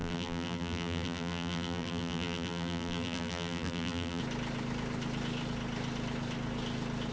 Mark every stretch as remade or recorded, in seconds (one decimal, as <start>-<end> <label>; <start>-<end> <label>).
0.0-4.2 remade; 4.2-7.1 recorded